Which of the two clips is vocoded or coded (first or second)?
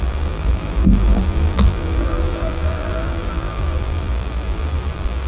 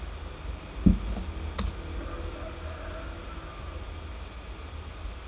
first